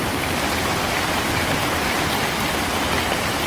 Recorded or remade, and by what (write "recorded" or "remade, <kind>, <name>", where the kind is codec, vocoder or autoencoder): recorded